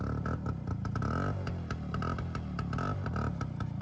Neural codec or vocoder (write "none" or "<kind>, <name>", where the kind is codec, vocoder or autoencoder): none